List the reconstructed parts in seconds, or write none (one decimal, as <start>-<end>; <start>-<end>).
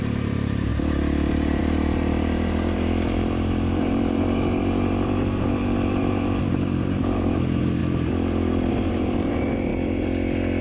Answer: 0.0-7.8; 8.7-9.7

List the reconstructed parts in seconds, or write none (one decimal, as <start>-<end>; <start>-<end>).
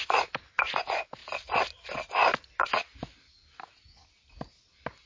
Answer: none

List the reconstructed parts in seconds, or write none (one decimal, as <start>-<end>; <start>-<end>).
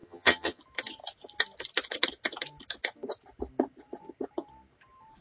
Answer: 0.0-0.6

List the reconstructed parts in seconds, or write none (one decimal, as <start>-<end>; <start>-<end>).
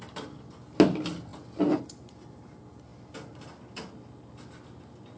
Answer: none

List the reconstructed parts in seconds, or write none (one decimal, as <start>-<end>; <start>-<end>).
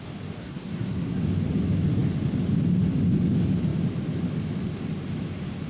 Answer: 0.4-1.2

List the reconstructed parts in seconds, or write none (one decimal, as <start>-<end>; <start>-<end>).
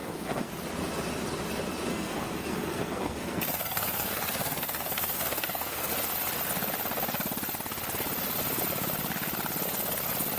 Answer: 0.0-0.5; 1.9-5.9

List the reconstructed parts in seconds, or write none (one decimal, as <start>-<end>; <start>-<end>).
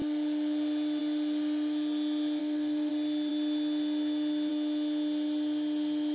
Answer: 2.4-2.9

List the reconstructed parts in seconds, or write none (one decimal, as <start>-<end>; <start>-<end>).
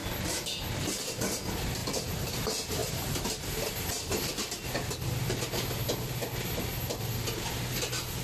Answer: 1.8-2.3